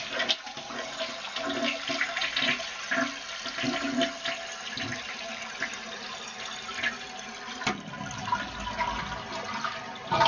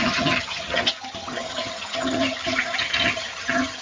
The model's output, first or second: second